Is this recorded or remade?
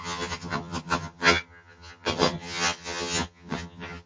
remade